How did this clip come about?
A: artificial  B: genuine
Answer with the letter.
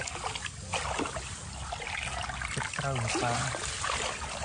B